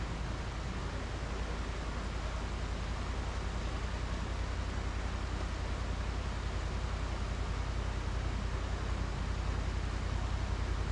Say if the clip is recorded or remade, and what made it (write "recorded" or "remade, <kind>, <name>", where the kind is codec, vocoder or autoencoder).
recorded